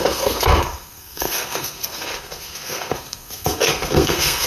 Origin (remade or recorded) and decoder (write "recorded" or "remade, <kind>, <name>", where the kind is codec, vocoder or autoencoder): remade, codec, SNAC